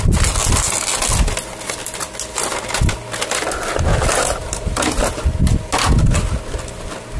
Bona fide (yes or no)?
yes